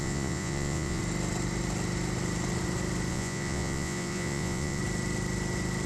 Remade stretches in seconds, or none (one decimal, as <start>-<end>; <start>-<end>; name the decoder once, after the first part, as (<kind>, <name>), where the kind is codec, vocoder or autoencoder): 0.0-1.0 (vocoder, Vocos); 3.1-4.8